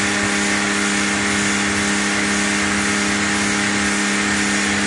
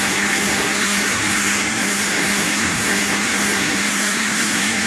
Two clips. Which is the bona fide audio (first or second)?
first